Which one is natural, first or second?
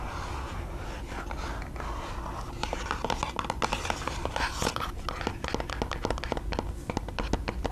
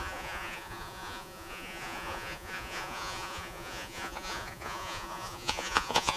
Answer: first